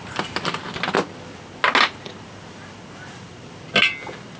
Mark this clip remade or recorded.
recorded